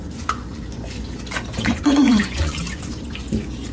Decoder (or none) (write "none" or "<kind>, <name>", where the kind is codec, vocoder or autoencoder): vocoder, Vocos